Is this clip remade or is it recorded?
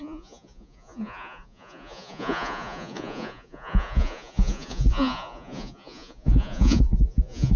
remade